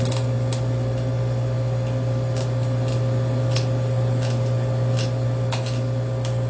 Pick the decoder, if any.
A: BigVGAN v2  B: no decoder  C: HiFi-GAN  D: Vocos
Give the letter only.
B